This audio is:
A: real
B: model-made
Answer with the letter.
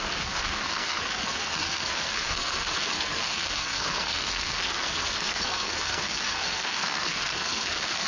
B